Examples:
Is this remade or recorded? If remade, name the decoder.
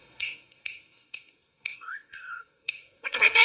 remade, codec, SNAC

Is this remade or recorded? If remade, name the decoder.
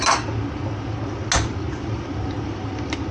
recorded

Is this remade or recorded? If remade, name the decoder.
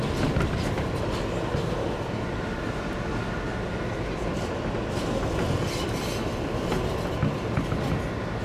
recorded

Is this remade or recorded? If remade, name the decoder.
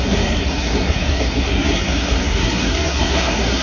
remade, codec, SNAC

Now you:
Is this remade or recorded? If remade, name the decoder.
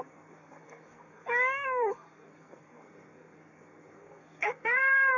remade, codec, SNAC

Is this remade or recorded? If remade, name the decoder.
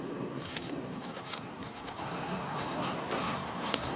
remade, codec, SNAC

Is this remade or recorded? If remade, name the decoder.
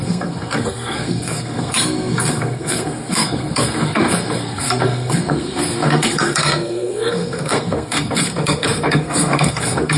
remade, codec, SNAC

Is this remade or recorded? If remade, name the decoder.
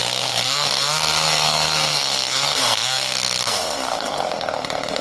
remade, codec, SNAC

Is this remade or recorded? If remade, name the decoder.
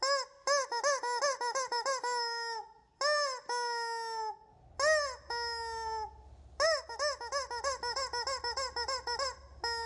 recorded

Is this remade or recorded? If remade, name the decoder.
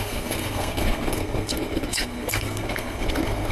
remade, codec, SNAC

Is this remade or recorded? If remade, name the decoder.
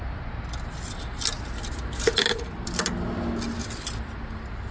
recorded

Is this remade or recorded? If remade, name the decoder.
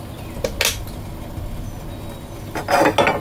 recorded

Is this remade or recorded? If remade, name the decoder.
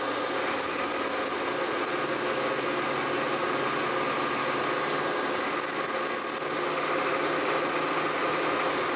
recorded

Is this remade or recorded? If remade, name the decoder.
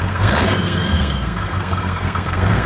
remade, codec, SNAC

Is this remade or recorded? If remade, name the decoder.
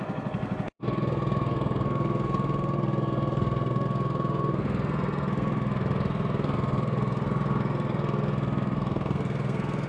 remade, codec, SNAC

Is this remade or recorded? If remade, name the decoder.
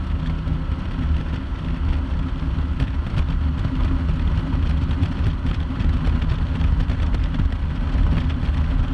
recorded